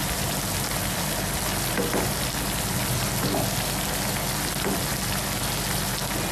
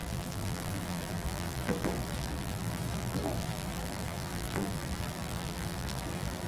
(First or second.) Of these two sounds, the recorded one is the first